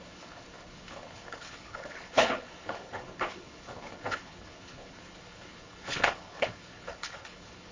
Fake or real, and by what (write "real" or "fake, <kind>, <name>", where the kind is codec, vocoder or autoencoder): fake, codec, HILCodec